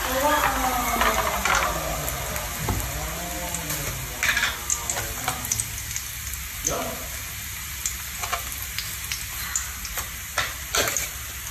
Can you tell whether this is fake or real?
real